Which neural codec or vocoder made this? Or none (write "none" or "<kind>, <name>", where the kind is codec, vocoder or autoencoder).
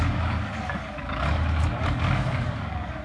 codec, DAC